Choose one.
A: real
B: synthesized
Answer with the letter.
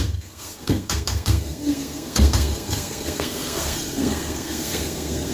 B